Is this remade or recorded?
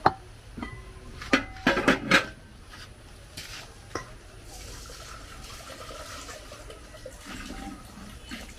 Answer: recorded